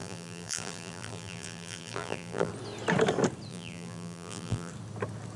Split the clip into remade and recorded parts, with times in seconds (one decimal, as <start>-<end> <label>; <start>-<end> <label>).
0.0-2.5 remade; 2.5-3.5 recorded; 3.5-4.7 remade; 4.7-5.4 recorded